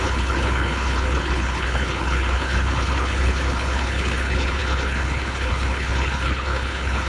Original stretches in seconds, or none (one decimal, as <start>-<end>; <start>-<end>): none

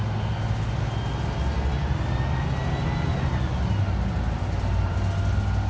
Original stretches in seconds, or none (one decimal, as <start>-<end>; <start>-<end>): 0.0-5.7

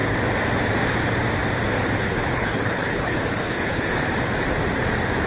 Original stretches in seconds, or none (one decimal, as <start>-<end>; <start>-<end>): 0.0-2.0; 3.9-5.3

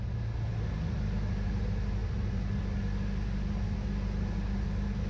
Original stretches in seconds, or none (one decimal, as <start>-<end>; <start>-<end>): 0.0-5.1

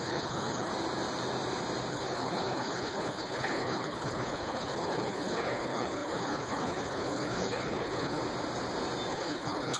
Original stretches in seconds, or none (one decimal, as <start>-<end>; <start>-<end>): 0.7-1.9; 8.2-9.1

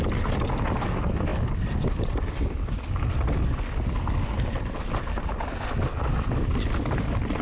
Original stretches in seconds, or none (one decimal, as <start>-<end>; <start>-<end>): 0.0-7.4

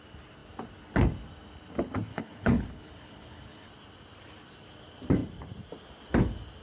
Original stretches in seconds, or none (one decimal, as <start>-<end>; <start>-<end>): 0.0-2.1; 3.7-6.6